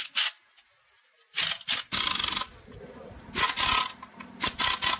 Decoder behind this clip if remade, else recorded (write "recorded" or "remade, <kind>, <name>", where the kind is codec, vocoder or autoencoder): recorded